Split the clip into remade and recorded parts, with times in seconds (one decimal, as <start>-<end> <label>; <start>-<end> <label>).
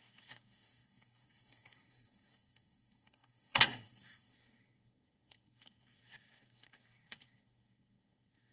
0.0-8.5 remade